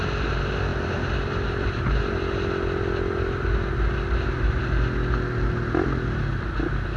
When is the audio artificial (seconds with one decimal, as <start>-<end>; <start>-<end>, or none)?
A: none